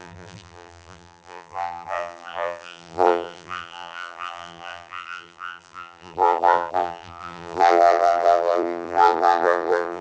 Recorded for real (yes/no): no